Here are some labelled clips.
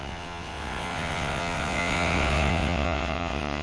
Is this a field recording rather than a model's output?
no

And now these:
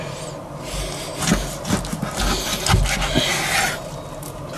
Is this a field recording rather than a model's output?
yes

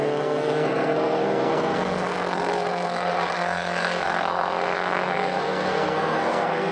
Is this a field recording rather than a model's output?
no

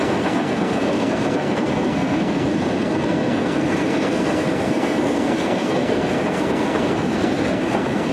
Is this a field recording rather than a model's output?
no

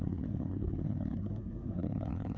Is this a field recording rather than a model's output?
no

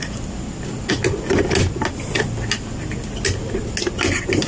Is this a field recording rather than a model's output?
yes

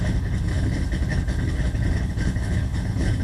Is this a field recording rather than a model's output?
no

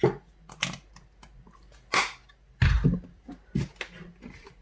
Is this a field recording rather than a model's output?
yes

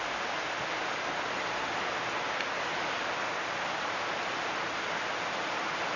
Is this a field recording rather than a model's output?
yes